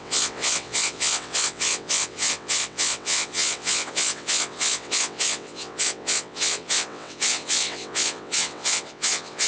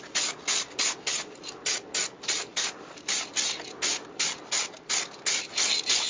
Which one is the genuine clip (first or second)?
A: second